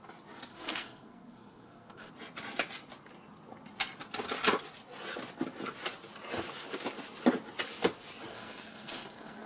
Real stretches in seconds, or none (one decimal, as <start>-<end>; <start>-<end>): 0.0-0.5; 2.1-8.3